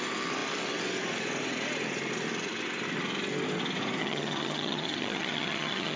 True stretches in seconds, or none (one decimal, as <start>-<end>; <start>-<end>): 0.0-4.0